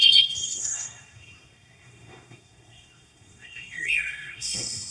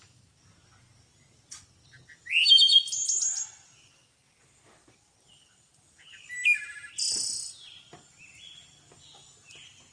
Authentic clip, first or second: second